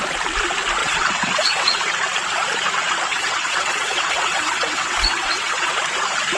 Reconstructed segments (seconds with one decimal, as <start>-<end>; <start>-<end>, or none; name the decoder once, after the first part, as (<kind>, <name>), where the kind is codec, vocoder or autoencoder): 0.8-1.8 (vocoder, WaveNeXt); 3.1-5.7